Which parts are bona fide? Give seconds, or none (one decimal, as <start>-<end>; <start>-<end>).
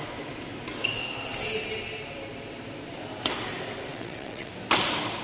0.0-3.9; 4.5-5.2